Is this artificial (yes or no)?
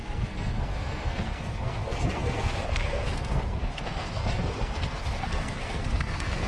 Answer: yes